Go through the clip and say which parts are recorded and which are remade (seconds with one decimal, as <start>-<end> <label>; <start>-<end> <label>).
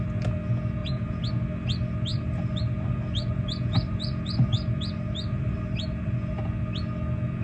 0.0-0.8 recorded; 0.8-1.3 remade; 1.3-2.1 recorded; 2.1-6.4 remade; 6.4-7.4 recorded